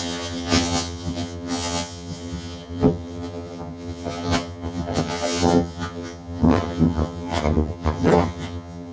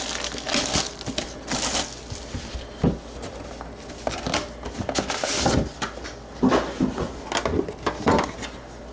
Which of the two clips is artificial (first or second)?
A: first